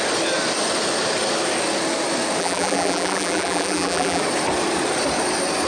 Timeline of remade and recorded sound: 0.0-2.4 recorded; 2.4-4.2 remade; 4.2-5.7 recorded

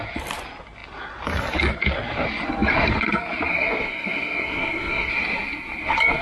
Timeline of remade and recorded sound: 0.0-3.5 recorded; 3.5-5.1 remade; 5.1-6.2 recorded

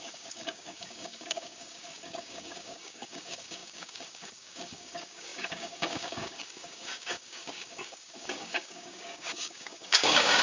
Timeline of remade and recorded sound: 0.0-10.4 remade

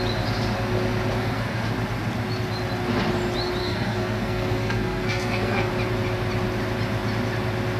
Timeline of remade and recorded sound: 0.0-1.2 recorded; 1.2-1.7 remade; 1.7-3.6 recorded; 3.6-5.7 remade; 5.7-7.8 recorded

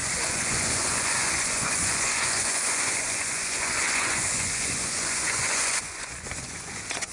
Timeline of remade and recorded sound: 0.0-7.1 remade

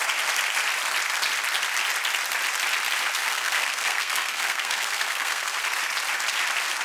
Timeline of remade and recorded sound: 0.0-3.2 recorded; 3.2-5.6 remade; 5.6-6.8 recorded